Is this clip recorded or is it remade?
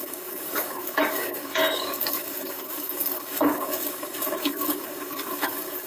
remade